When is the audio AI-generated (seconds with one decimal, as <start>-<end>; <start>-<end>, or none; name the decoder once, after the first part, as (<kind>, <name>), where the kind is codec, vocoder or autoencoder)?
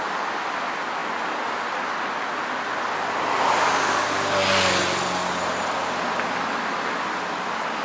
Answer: none